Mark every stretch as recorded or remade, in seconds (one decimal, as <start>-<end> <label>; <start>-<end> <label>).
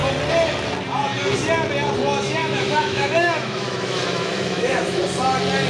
0.0-2.4 recorded; 2.4-5.0 remade; 5.0-5.7 recorded